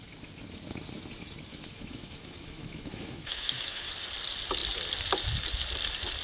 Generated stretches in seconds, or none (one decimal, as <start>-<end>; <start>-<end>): 1.5-3.9